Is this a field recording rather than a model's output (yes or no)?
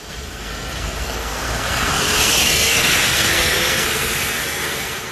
no